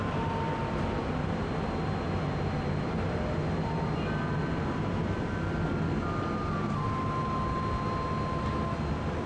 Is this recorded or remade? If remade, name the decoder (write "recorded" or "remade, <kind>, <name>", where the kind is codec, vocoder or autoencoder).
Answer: recorded